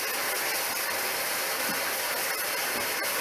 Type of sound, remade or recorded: recorded